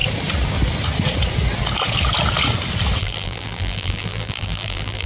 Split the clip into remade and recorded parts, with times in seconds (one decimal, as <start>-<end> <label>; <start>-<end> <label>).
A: 0.0-3.0 recorded; 3.0-5.1 remade